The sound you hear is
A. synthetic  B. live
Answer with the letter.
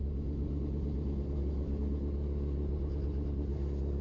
B